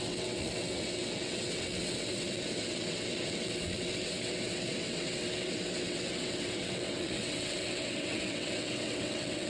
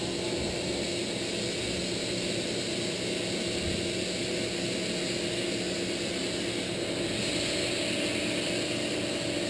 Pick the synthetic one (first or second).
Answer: first